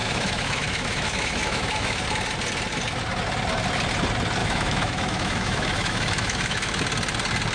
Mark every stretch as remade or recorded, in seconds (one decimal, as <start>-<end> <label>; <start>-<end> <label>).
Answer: 0.0-2.0 remade; 2.0-4.4 recorded; 4.4-6.8 remade; 6.8-7.5 recorded